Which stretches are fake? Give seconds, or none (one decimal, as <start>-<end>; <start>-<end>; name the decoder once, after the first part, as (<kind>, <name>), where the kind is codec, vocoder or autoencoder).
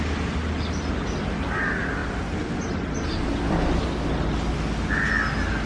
none